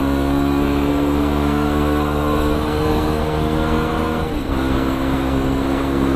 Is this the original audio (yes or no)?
no